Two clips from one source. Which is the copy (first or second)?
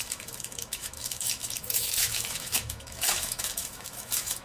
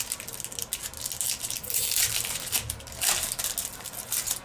first